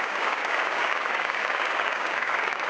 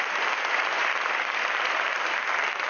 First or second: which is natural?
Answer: second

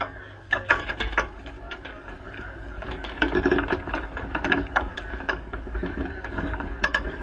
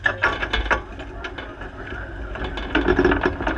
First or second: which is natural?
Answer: second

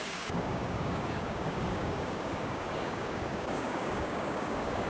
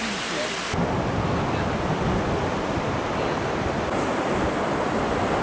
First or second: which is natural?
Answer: second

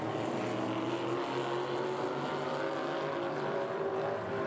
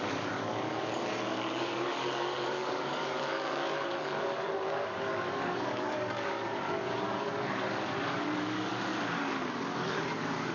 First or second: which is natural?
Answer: first